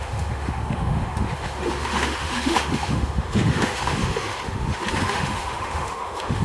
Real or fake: fake